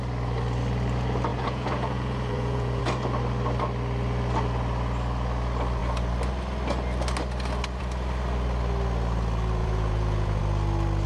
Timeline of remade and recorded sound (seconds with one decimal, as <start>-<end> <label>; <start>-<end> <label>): 0.0-1.3 recorded; 1.3-2.8 remade; 2.8-9.6 recorded; 9.6-10.4 remade; 10.4-11.1 recorded

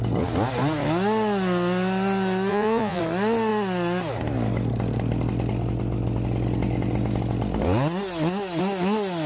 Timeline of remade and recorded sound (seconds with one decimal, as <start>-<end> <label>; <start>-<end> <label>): 0.0-2.5 recorded; 2.5-3.0 remade; 3.0-9.3 recorded